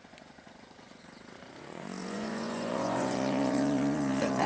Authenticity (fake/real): fake